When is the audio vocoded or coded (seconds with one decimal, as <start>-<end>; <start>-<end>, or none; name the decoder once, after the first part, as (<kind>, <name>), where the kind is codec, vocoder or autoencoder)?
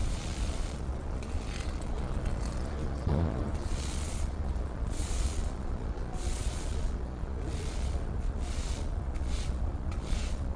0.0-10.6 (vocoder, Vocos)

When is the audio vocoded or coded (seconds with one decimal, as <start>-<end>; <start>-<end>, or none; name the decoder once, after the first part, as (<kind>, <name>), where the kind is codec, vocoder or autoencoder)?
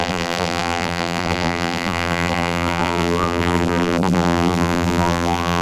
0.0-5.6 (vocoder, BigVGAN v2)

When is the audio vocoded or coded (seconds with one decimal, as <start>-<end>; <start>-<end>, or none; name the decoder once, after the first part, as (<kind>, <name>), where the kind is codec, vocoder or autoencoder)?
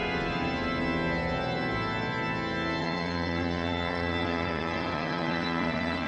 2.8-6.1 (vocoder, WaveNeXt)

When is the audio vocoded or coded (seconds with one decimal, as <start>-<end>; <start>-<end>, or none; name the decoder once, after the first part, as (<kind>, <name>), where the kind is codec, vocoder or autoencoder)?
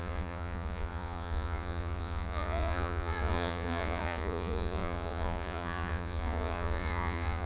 0.0-7.5 (vocoder, Vocos)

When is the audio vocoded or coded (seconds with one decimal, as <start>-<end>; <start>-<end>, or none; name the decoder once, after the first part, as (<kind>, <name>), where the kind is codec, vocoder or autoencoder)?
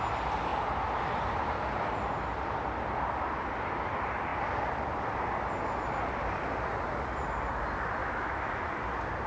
8.0-8.7 (autoencoder, DAC-VAE)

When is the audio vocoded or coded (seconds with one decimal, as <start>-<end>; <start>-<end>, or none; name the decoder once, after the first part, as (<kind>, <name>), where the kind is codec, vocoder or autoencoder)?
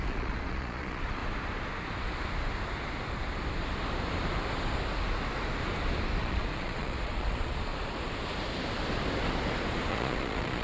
0.0-1.2 (vocoder, Vocos); 6.2-7.7; 9.9-10.6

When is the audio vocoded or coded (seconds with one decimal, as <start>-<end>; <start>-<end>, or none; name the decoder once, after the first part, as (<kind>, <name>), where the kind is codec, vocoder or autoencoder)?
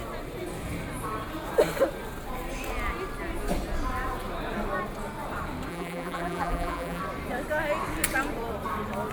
5.7-7.0 (vocoder, BigVGAN v2)